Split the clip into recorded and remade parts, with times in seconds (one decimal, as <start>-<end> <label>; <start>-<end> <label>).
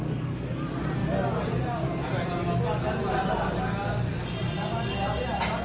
0.0-5.6 recorded